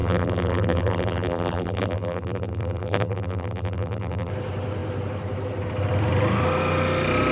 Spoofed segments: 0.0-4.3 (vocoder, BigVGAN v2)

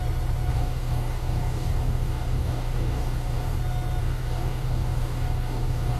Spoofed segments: 0.5-3.6 (codec, DAC); 4.0-6.0

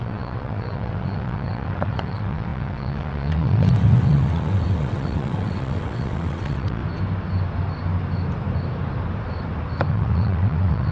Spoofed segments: 0.0-6.8 (vocoder, WaveNeXt); 9.9-10.9